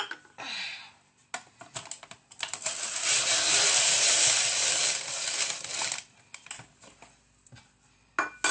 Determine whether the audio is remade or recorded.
recorded